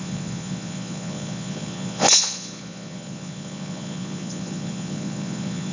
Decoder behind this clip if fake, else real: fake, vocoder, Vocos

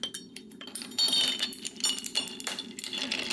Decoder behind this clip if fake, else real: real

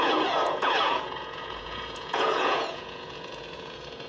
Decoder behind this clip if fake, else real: fake, vocoder, Vocos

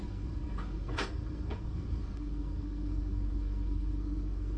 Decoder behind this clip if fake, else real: fake, codec, SNAC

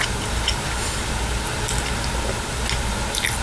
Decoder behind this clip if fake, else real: real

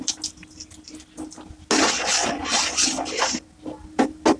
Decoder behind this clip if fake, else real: real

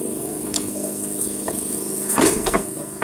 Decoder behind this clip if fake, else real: fake, codec, SNAC